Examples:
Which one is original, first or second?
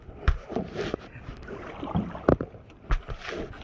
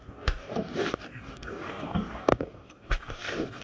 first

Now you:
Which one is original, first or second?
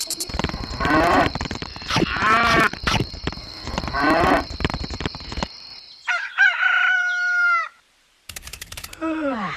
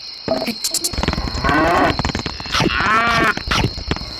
second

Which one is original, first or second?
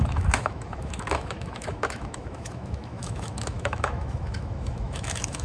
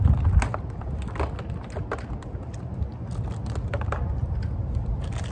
second